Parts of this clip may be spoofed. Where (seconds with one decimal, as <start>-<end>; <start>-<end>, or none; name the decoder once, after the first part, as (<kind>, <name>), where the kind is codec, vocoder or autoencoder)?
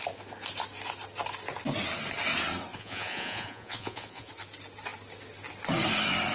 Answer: 2.7-4.3 (vocoder, Vocos)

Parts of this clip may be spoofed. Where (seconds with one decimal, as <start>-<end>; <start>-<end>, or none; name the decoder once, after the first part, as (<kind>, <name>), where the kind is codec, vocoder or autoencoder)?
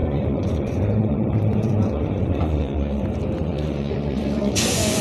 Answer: 0.0-3.0 (vocoder, Vocos); 3.4-5.0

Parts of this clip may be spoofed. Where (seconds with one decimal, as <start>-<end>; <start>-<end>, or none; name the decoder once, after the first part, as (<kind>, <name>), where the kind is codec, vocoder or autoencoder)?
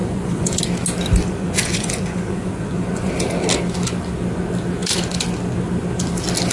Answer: 0.0-0.6 (vocoder, Vocos); 1.2-3.1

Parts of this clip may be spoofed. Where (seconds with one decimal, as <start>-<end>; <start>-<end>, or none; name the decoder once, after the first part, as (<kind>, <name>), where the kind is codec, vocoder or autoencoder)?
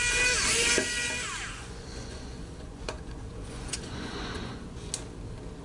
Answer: 1.5-4.9 (vocoder, Vocos)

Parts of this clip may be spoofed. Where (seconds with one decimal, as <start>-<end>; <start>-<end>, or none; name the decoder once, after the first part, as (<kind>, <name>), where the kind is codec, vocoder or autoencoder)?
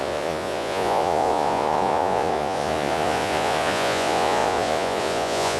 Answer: 0.0-5.6 (vocoder, Vocos)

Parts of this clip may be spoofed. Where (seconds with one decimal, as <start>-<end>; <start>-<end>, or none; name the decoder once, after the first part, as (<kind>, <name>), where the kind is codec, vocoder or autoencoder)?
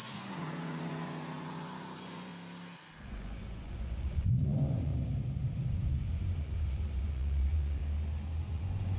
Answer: 0.0-2.3 (vocoder, Vocos); 3.0-4.9; 5.7-7.8; 8.5-9.0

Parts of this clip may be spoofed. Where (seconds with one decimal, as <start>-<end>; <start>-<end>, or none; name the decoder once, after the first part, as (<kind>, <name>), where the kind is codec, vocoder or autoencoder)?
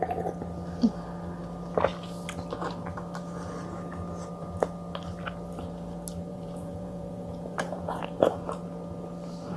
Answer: 6.3-8.0 (vocoder, Vocos)